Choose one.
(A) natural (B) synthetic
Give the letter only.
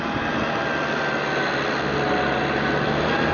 A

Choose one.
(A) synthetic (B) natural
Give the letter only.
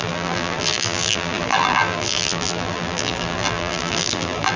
A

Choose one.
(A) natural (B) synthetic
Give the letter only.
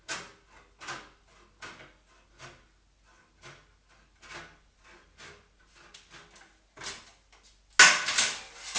A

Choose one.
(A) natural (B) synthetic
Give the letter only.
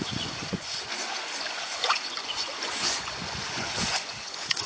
B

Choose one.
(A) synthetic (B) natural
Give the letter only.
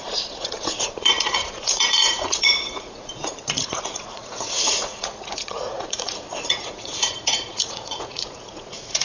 A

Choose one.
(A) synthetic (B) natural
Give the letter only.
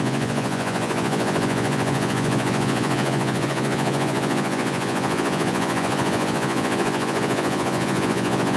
A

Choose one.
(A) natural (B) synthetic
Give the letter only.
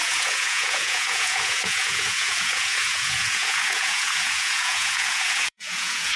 B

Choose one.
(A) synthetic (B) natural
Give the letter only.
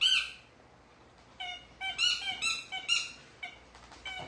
B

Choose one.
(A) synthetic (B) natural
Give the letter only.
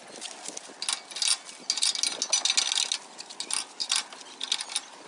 B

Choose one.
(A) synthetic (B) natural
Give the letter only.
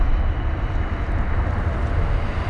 B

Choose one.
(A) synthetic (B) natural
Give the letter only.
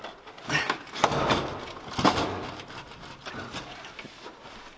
B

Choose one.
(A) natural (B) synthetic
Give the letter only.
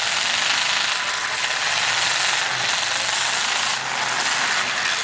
A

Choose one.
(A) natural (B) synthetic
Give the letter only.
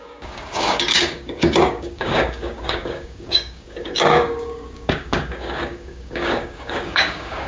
B